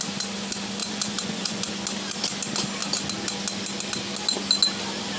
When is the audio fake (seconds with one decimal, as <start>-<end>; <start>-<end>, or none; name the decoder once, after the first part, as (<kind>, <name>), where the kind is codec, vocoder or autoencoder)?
0.8-1.7 (vocoder, Vocos)